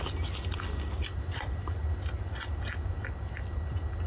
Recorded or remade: recorded